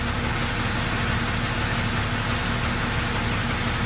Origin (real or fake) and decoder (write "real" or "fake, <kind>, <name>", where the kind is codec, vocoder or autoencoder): real